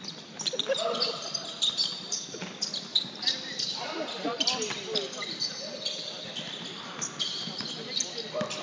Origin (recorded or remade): recorded